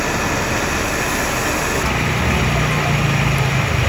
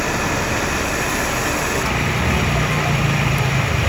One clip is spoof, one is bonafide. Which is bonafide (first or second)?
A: first